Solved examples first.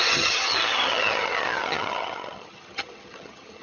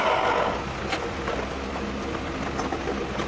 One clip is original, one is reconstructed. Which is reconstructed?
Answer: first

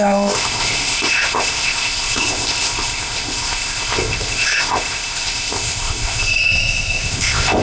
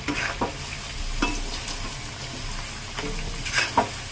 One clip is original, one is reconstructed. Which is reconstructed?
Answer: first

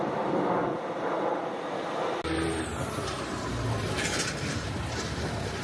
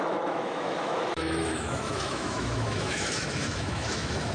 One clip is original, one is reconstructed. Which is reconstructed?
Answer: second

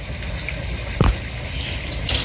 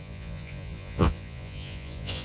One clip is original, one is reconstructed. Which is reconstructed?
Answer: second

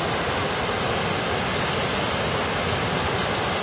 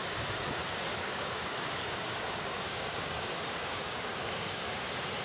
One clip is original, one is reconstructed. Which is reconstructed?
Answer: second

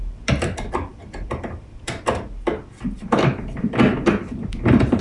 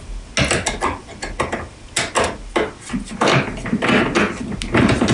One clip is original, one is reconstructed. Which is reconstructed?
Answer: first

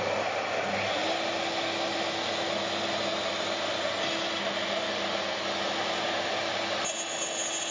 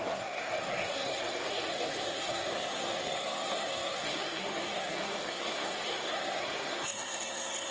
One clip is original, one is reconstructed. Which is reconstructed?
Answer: second